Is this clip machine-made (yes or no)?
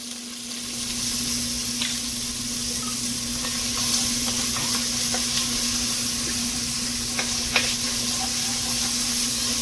no